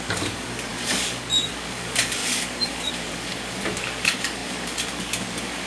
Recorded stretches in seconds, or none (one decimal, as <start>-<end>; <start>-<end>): none